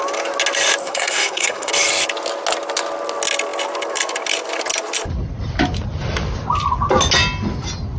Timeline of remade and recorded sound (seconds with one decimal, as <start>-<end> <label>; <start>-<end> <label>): 0.0-0.8 recorded; 0.8-1.7 remade; 1.7-8.0 recorded